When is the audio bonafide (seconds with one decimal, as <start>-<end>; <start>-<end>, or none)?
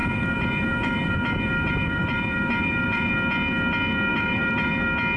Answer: 3.1-4.1; 4.7-5.2